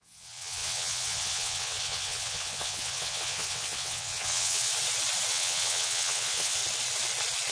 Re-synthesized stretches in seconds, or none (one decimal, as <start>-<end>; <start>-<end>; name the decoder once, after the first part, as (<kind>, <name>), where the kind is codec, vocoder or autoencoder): 0.0-4.7 (vocoder, WaveNeXt); 5.3-6.6